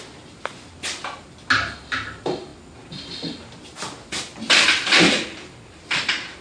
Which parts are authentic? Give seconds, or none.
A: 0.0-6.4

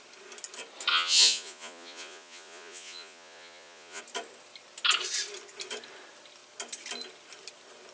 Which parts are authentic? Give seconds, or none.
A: 0.0-0.9; 4.0-7.9